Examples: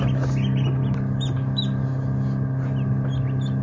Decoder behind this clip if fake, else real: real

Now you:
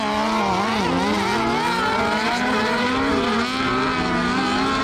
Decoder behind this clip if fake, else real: real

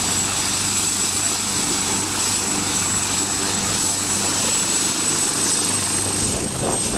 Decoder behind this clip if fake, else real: real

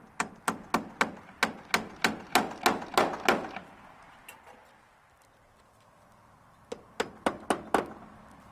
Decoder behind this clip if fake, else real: real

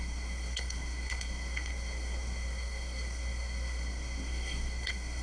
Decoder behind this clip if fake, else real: fake, codec, SNAC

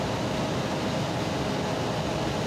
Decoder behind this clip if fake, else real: real